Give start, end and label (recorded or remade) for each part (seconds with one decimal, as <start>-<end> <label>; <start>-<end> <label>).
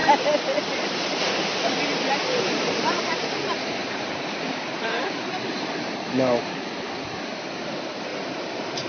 0.0-2.2 recorded; 2.2-3.4 remade; 3.4-3.8 recorded; 3.8-6.5 remade; 6.5-8.1 recorded; 8.1-8.9 remade